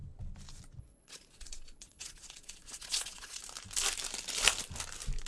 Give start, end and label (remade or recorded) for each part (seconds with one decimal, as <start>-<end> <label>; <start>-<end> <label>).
0.0-0.8 recorded; 0.8-3.4 remade; 3.4-5.3 recorded